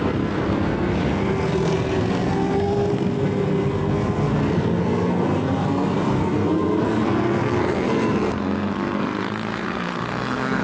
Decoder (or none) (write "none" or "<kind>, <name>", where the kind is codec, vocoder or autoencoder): codec, SNAC